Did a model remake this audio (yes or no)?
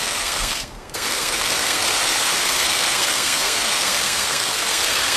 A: yes